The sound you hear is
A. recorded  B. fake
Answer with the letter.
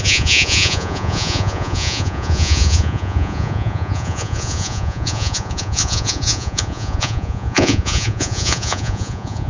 B